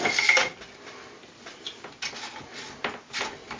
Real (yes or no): yes